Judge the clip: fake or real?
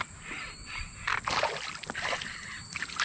real